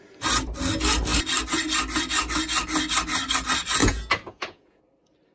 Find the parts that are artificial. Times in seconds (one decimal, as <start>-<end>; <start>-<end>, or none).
3.8-4.8

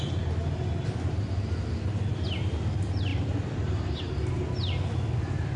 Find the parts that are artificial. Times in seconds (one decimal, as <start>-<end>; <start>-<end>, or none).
none

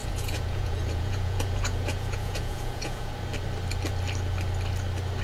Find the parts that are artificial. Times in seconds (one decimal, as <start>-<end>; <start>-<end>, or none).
0.0-3.1

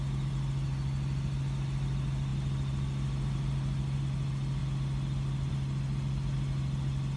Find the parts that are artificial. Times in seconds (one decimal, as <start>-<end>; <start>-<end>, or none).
none

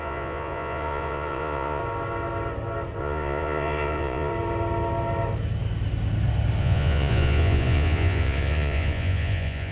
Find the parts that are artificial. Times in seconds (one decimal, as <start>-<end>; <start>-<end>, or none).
0.0-1.8; 3.0-4.3; 6.6-9.7

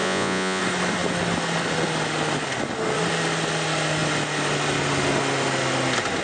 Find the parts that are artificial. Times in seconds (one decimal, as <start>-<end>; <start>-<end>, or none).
0.0-0.6

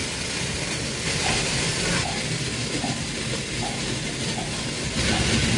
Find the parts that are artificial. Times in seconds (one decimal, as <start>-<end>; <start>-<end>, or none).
none

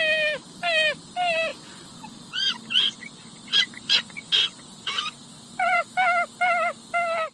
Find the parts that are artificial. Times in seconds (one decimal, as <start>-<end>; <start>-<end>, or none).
1.5-5.9